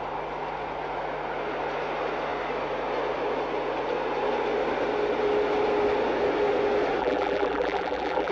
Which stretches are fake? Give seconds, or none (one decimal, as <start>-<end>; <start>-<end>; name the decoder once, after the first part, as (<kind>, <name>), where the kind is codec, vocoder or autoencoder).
7.0-8.3 (vocoder, BigVGAN v2)